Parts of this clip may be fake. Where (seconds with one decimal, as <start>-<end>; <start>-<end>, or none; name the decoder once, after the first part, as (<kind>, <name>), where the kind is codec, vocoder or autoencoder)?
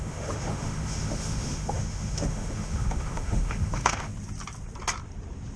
0.0-4.1 (autoencoder, DAC-VAE)